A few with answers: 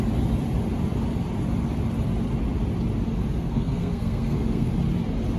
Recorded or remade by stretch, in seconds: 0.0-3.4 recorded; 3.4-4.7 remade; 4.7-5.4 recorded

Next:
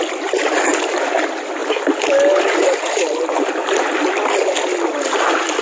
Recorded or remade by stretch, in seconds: 0.0-5.6 recorded